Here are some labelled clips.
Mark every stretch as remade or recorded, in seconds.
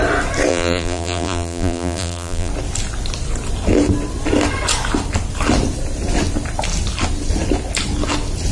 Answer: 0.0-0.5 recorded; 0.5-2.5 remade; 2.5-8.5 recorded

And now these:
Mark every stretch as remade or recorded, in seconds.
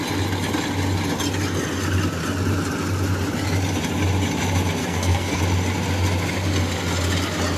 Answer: 0.0-4.8 recorded; 4.8-5.4 remade; 5.4-7.6 recorded